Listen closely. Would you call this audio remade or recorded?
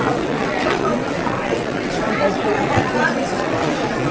remade